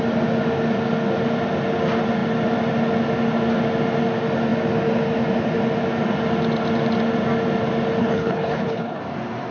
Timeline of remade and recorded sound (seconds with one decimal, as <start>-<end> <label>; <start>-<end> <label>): 0.0-8.0 recorded; 8.0-9.0 remade; 9.0-9.5 recorded